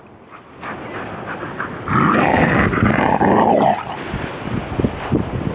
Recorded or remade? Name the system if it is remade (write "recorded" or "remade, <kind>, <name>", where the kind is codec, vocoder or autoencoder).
recorded